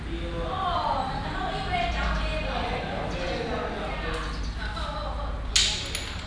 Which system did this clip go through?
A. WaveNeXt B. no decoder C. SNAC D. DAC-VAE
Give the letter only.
B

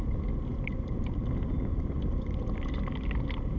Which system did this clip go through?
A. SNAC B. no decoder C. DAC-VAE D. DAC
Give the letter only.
B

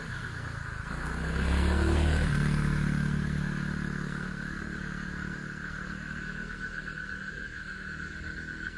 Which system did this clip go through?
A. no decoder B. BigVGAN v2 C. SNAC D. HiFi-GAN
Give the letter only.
C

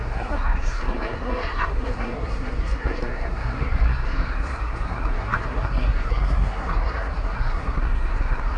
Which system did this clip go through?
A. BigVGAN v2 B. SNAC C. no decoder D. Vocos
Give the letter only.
B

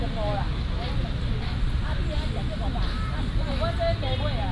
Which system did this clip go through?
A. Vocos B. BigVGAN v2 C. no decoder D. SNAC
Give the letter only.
C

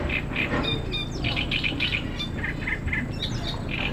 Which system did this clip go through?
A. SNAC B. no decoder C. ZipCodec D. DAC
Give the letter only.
B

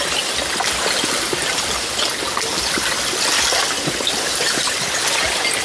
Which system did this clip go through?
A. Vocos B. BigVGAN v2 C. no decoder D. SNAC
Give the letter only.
C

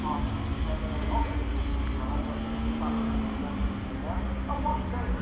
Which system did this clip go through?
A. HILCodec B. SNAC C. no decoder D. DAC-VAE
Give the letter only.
C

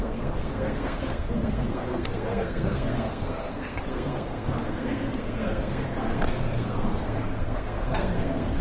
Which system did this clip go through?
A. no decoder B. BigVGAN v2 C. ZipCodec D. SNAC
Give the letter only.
D